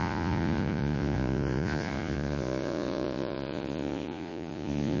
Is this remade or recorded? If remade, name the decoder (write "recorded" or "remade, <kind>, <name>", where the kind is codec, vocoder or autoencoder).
remade, vocoder, Vocos